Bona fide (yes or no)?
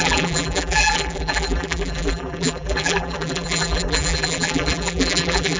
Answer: no